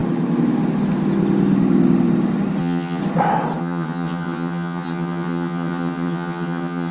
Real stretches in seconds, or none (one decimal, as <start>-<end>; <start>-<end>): 0.0-2.6; 3.0-3.6